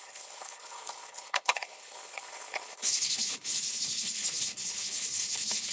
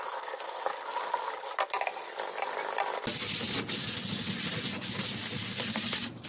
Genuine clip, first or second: second